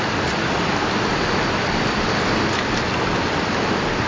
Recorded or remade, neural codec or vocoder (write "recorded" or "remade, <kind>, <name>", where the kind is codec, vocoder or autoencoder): recorded